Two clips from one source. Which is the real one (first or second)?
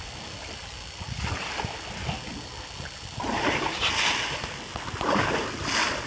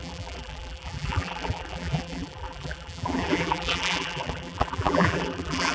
first